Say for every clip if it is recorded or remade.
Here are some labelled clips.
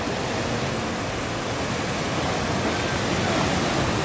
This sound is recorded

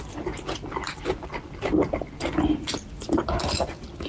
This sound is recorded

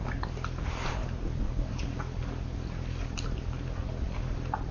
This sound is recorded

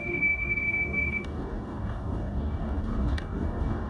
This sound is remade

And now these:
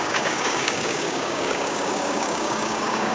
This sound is remade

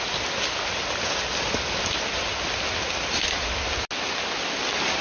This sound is recorded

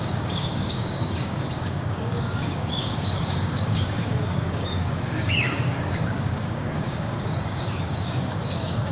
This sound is remade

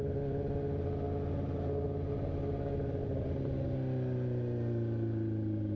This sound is recorded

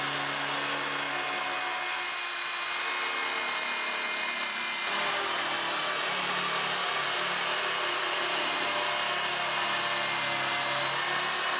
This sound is recorded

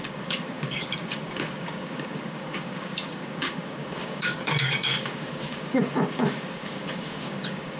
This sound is remade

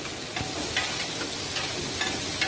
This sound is recorded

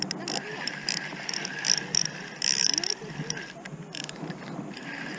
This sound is recorded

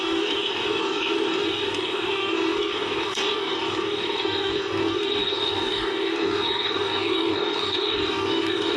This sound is remade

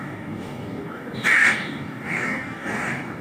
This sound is remade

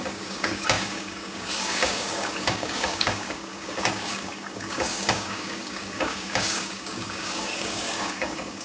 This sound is remade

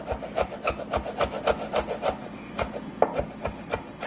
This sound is recorded